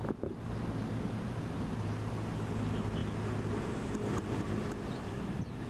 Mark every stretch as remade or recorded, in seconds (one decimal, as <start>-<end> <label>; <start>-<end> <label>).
0.0-5.7 recorded